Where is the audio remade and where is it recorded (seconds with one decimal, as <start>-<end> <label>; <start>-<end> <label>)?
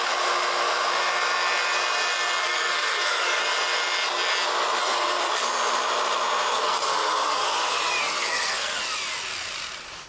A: 0.0-2.4 recorded; 2.4-3.4 remade; 3.4-4.8 recorded; 4.8-5.3 remade; 5.3-6.5 recorded; 6.5-8.8 remade; 8.8-10.1 recorded